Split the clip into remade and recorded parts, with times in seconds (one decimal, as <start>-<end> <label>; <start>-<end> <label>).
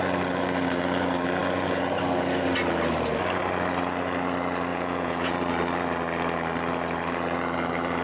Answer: 0.0-4.7 recorded; 4.7-5.3 remade; 5.3-8.0 recorded